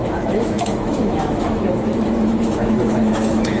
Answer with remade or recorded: remade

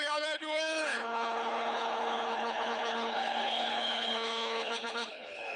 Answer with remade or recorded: remade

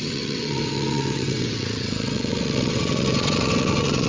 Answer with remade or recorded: remade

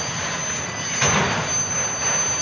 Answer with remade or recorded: recorded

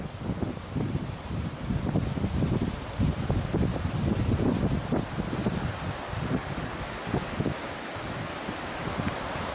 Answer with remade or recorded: recorded